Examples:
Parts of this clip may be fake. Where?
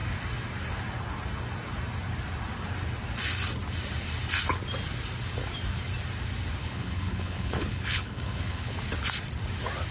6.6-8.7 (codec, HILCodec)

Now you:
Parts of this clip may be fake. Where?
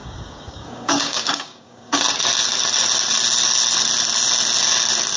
0.0-2.0 (codec, DAC)